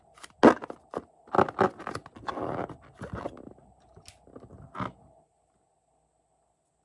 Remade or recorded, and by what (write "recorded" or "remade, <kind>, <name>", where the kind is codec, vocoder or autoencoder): recorded